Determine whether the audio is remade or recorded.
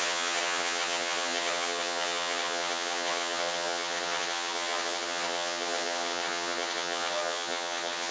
remade